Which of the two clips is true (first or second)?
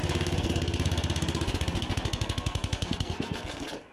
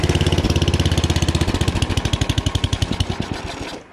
second